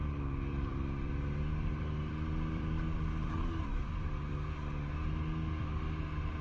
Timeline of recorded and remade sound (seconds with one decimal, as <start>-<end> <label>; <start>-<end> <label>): 0.0-0.5 recorded; 0.5-4.3 remade; 4.3-6.4 recorded